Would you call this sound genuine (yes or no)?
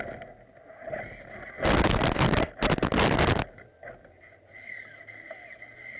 yes